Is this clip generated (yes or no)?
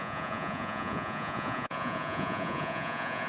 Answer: yes